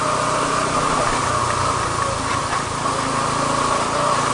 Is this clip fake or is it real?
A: real